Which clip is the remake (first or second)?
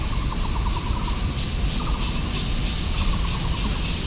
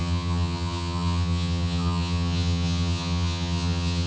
second